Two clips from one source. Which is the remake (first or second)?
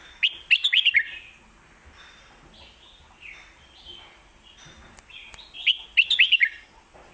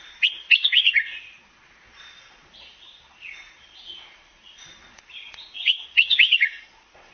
second